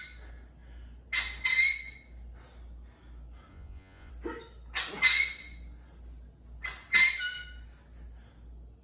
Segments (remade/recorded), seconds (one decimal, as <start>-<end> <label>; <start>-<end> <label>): 0.0-3.5 recorded; 3.5-4.1 remade; 4.1-8.8 recorded